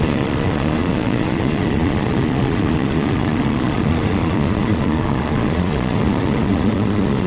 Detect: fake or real fake